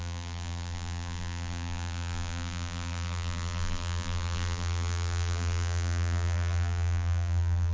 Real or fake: fake